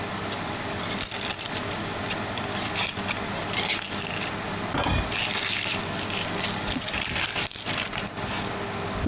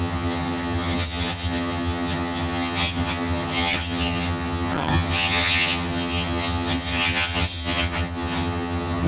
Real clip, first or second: first